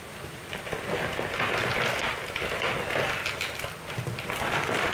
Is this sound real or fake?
real